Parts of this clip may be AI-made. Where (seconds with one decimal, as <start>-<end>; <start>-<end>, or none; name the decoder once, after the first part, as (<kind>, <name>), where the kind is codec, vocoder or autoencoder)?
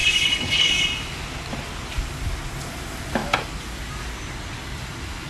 0.0-0.7 (codec, HILCodec)